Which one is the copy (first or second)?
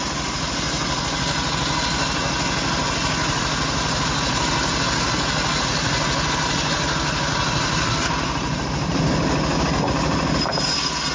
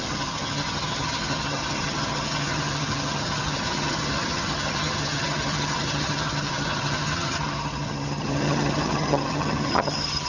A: second